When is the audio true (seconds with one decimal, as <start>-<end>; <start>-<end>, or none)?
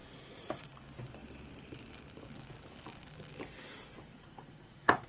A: 0.7-4.1